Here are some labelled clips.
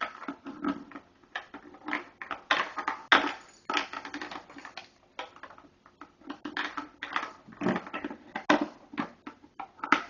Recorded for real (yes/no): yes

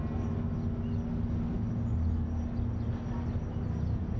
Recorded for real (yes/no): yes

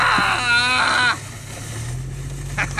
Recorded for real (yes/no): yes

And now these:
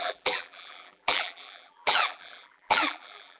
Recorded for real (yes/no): no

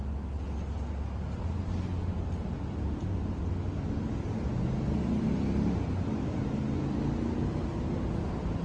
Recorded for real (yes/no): yes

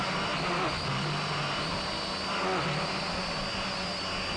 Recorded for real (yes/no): yes